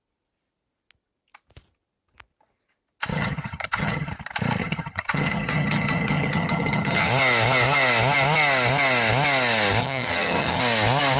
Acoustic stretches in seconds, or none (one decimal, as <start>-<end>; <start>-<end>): 0.0-3.1; 4.1-4.6; 7.1-9.8; 10.6-11.2